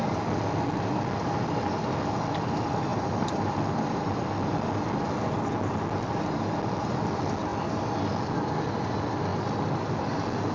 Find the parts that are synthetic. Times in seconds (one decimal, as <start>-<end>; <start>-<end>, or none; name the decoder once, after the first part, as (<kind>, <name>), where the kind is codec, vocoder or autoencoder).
2.9-4.2 (vocoder, BigVGAN v2); 9.3-10.0